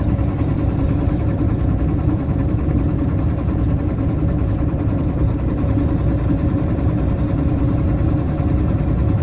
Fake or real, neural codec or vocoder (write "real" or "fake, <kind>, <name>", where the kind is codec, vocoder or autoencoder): fake, vocoder, BigVGAN v2